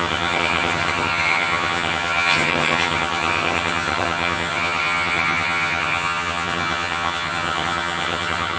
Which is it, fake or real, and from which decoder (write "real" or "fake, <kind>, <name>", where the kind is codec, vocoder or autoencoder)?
fake, vocoder, HiFi-GAN